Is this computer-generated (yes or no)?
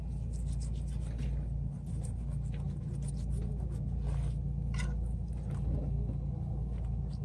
no